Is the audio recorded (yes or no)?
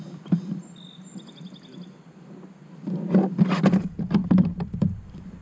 no